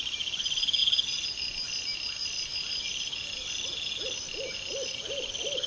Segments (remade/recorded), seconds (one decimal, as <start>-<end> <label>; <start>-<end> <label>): 0.0-5.7 recorded